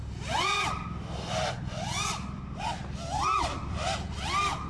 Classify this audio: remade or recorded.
recorded